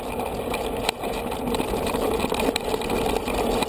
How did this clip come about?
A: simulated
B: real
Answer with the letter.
B